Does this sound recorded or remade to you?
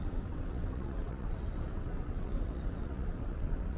remade